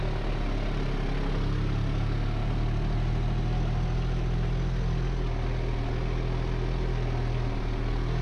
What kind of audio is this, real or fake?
real